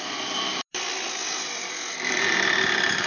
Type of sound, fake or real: real